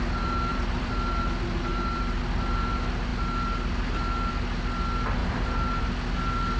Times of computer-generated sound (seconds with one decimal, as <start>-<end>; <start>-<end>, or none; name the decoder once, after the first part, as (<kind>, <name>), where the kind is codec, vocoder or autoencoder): 0.5-1.2 (vocoder, BigVGAN v2); 1.7-2.2; 5.2-5.8